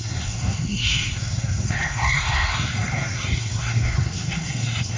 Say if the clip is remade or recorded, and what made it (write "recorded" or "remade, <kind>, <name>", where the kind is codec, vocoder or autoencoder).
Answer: remade, codec, SNAC